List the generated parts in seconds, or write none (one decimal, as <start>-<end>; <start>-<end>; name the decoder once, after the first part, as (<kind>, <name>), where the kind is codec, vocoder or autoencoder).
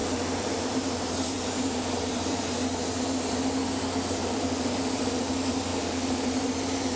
0.0-2.4 (vocoder, BigVGAN v2); 4.2-5.2; 5.7-6.5